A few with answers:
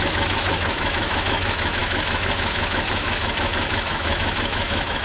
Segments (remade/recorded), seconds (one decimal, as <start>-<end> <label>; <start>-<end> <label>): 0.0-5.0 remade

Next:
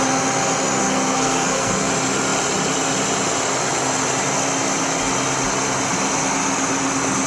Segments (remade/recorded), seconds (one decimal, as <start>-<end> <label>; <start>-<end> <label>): 0.0-0.8 recorded; 0.8-1.9 remade; 1.9-7.3 recorded

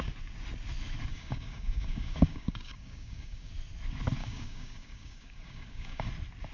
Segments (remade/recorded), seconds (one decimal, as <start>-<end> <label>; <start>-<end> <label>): 0.0-1.1 recorded; 1.1-3.5 remade; 3.5-4.2 recorded; 4.2-6.1 remade; 6.1-6.5 recorded

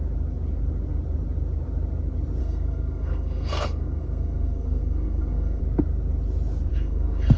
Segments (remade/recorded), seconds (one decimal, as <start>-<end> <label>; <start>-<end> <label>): 0.0-2.4 recorded; 2.4-5.6 remade; 5.6-6.7 recorded; 6.7-7.4 remade

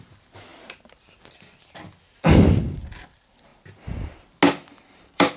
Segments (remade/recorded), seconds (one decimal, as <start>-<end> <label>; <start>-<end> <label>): 0.0-0.5 remade; 0.5-2.5 recorded; 2.5-3.5 remade; 3.5-4.7 recorded; 4.7-5.4 remade

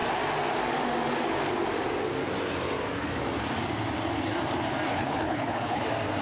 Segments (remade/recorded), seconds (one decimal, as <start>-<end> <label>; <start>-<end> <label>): 0.0-4.9 recorded; 4.9-5.8 remade; 5.8-6.2 recorded

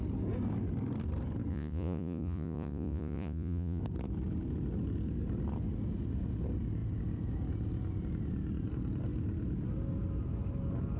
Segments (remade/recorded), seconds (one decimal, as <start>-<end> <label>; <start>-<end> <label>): 0.0-1.5 recorded; 1.5-3.8 remade; 3.8-11.0 recorded